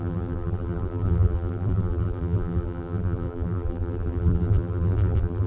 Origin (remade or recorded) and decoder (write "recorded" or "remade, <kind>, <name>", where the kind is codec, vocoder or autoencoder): remade, vocoder, BigVGAN v2